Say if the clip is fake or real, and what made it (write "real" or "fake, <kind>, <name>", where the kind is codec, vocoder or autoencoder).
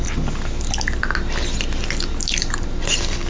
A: real